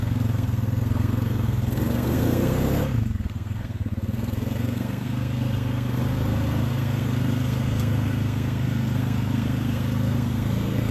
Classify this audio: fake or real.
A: fake